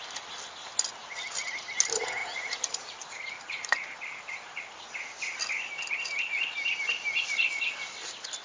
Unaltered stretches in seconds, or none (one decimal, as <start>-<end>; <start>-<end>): 0.0-2.2; 4.6-8.4